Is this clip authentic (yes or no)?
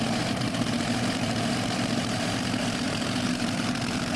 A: no